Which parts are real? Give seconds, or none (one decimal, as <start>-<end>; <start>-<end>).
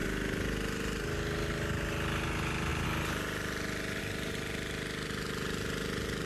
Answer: 0.0-6.3